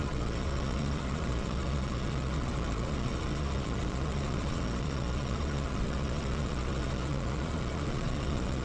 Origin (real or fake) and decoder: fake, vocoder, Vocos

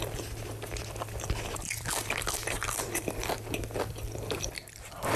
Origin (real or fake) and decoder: fake, vocoder, BigVGAN v2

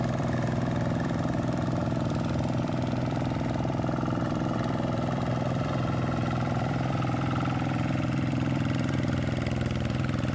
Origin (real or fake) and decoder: fake, vocoder, BigVGAN v2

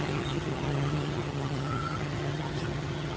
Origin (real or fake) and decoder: fake, vocoder, HiFi-GAN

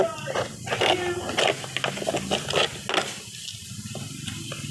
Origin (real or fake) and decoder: real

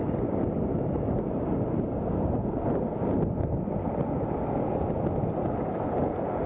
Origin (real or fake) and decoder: real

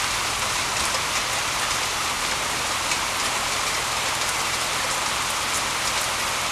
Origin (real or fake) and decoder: real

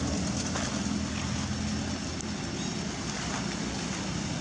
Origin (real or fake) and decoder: real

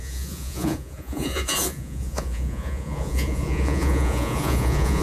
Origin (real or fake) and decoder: fake, vocoder, Vocos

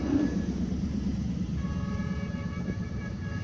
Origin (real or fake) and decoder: fake, vocoder, BigVGAN v2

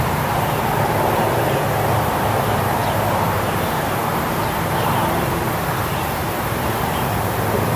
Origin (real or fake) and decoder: fake, vocoder, BigVGAN v2